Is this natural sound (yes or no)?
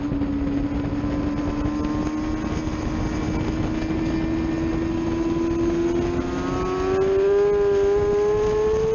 yes